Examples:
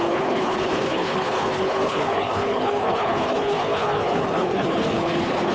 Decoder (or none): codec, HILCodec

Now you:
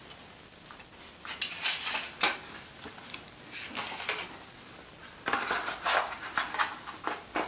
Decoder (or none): none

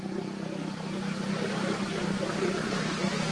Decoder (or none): none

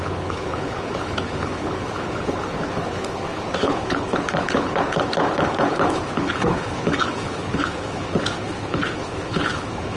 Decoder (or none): codec, HILCodec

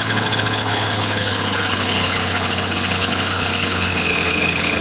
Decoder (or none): codec, HILCodec